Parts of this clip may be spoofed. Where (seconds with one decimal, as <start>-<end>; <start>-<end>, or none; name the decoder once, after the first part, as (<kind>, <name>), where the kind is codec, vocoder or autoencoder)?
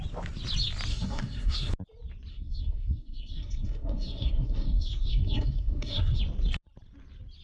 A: 0.9-1.7 (codec, SNAC); 2.3-6.2